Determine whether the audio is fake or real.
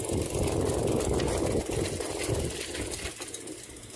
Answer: real